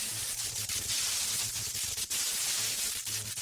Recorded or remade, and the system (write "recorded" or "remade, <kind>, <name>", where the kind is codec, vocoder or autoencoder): recorded